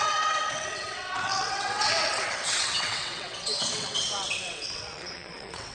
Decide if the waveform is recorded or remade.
remade